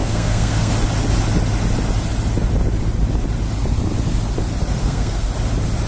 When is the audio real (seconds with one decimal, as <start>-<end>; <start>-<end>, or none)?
0.7-4.8; 5.3-5.9